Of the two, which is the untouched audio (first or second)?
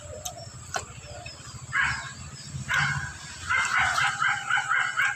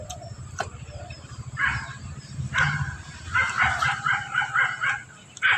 first